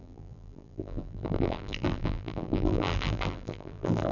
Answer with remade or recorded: remade